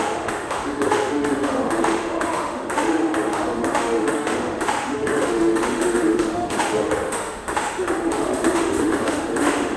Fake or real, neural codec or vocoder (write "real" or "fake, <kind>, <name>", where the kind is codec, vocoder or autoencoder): fake, autoencoder, DAC-VAE